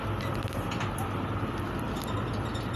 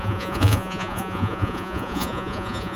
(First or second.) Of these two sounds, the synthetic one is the second